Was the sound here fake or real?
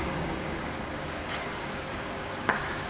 fake